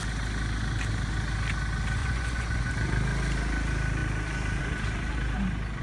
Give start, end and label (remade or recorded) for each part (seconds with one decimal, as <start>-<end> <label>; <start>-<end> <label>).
0.0-2.0 recorded; 2.0-2.7 remade; 2.7-5.8 recorded